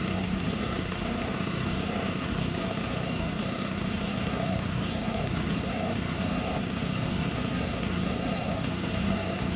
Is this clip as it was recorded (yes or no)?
no